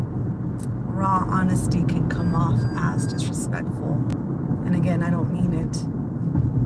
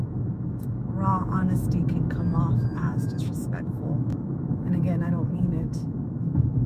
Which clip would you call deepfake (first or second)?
second